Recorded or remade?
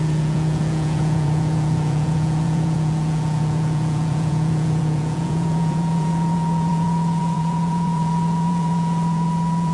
remade